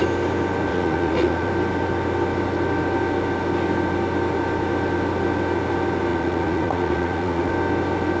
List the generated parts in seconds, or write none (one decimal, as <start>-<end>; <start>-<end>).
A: 0.7-1.5; 6.1-7.5